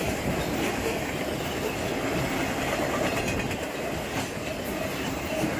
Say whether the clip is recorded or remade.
recorded